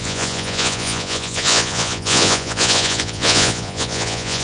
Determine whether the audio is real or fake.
fake